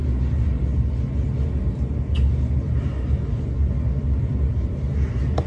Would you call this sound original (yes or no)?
yes